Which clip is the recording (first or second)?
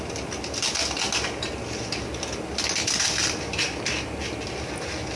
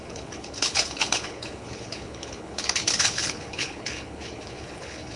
first